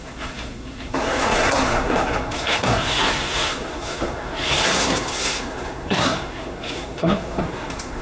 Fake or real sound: fake